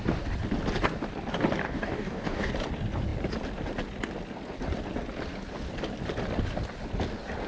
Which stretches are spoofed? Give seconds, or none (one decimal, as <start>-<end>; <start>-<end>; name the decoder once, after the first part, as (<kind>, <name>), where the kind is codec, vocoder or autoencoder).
1.6-2.5 (codec, DAC)